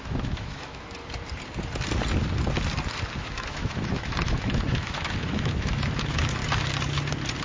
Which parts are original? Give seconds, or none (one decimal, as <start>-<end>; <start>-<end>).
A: 1.0-3.2; 6.4-7.4